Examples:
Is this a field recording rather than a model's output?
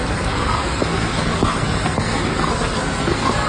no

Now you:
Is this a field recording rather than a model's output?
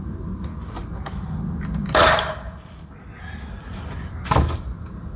yes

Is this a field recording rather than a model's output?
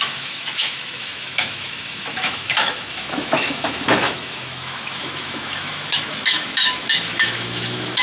no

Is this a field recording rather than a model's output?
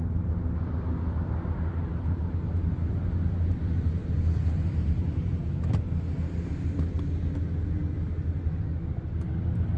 yes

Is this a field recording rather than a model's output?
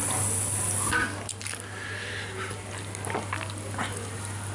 yes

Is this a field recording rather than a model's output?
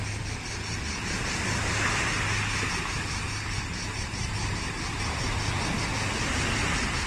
yes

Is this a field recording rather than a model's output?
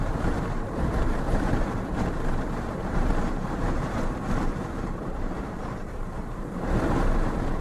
no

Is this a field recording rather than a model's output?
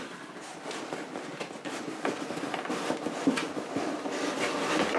yes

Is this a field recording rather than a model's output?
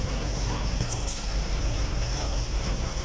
no